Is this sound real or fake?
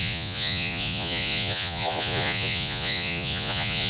fake